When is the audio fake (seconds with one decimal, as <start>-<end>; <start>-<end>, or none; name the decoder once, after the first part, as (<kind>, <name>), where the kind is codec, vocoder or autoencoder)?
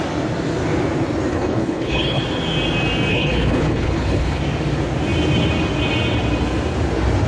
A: 1.3-2.2 (codec, HILCodec); 3.1-4.4